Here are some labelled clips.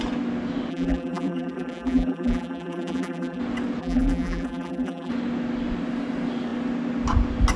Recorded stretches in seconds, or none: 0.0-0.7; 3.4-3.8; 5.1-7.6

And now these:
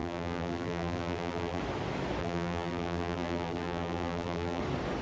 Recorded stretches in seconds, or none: 1.6-2.2; 4.6-5.0

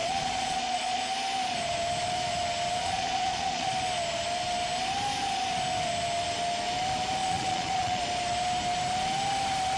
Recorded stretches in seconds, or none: 1.0-2.8; 3.7-7.2; 8.0-9.8